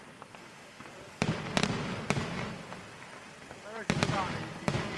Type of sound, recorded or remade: recorded